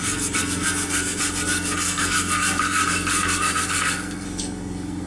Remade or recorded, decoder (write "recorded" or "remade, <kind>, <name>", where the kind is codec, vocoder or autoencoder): remade, codec, SNAC